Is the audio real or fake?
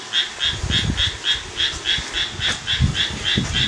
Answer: real